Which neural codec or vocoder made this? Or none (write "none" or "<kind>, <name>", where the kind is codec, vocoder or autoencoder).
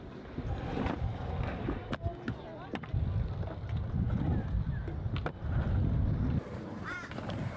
none